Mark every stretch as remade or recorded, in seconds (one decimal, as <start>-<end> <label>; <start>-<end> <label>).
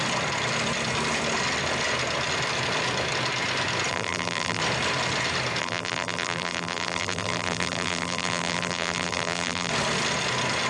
0.0-3.9 recorded; 3.9-4.6 remade; 4.6-5.6 recorded; 5.6-9.7 remade; 9.7-10.7 recorded